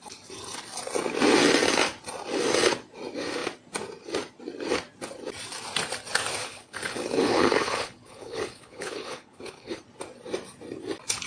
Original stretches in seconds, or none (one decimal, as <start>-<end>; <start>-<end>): 0.0-6.4; 9.8-11.3